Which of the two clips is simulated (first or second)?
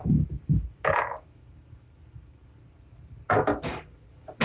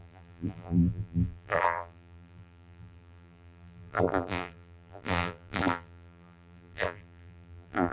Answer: second